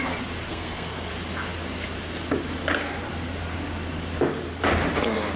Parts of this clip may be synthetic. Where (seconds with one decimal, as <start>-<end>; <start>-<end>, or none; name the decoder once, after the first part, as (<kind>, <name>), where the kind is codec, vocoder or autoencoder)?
0.5-1.1 (codec, SNAC)